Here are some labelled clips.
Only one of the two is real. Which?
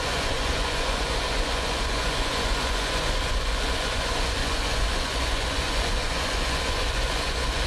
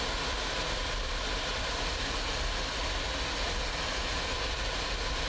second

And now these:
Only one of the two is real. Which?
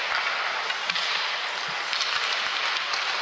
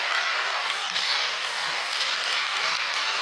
first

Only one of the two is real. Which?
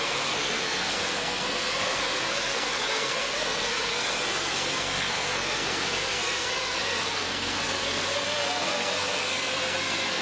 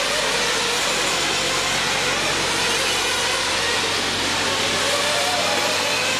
second